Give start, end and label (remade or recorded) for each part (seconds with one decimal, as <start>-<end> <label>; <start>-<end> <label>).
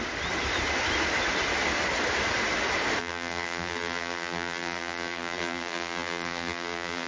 0.0-3.0 recorded; 3.0-7.1 remade